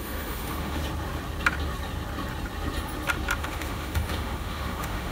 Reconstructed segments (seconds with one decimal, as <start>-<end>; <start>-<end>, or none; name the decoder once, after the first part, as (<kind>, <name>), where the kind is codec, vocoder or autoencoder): 0.0-0.8 (autoencoder, DAC-VAE); 3.4-5.1